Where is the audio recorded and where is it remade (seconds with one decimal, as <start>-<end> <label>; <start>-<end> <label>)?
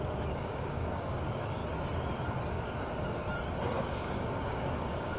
0.0-1.6 remade; 1.6-2.5 recorded; 2.5-3.2 remade; 3.2-3.8 recorded; 3.8-5.2 remade